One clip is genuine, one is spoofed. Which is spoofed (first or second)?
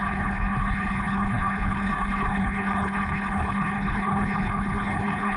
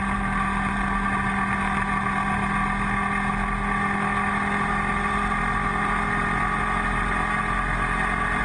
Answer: first